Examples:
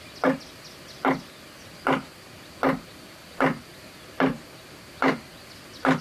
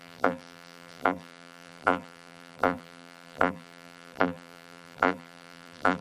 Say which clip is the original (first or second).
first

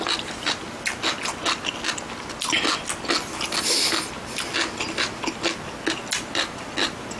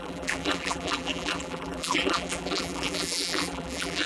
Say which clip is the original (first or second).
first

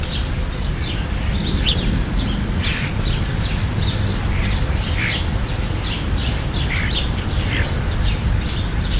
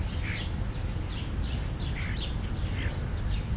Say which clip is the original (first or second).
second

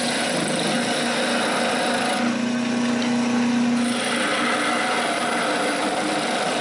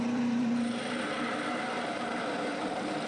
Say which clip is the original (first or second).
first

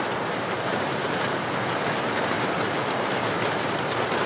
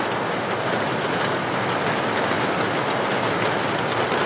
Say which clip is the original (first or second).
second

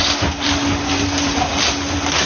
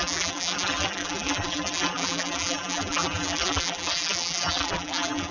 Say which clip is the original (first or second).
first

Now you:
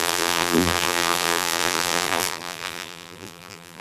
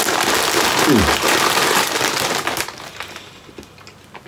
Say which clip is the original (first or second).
second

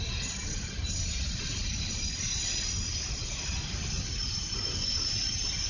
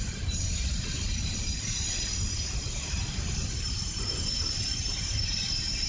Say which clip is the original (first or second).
first